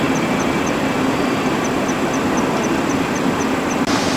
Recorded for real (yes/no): yes